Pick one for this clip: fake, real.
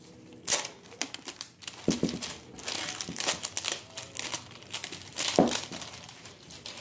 real